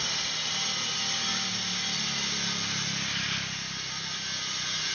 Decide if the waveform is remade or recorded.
recorded